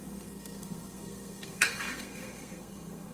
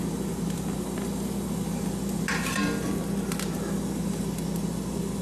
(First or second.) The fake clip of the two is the first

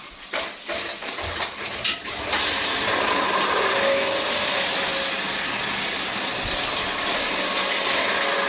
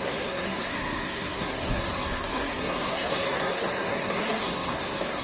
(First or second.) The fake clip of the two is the second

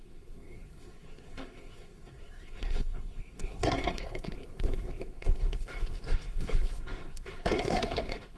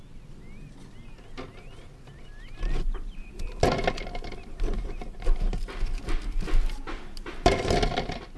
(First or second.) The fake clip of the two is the first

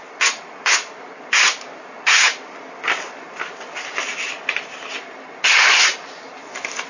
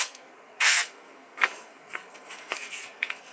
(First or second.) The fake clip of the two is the second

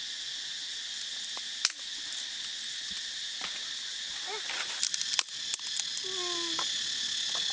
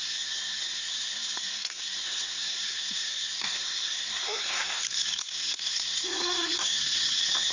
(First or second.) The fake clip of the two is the second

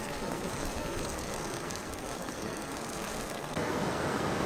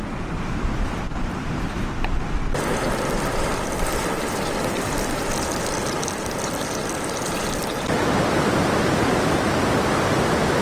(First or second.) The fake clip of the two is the first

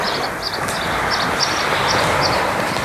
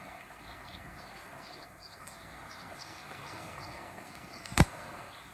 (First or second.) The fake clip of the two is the second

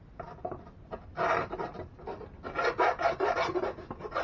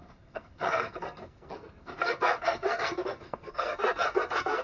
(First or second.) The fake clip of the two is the second